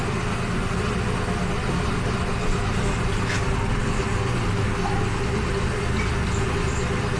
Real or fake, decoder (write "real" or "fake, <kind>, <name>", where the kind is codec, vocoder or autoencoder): real